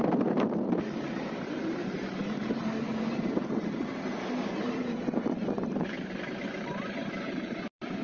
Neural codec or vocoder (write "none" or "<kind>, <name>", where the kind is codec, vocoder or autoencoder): vocoder, BigVGAN v2